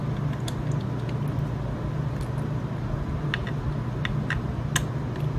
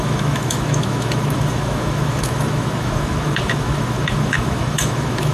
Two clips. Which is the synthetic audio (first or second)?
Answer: second